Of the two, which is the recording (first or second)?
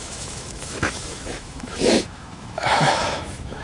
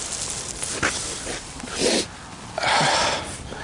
second